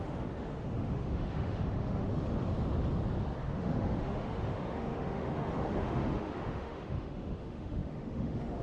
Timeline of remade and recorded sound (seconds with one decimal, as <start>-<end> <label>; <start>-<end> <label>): 0.0-2.1 remade; 2.1-3.5 recorded; 3.5-8.6 remade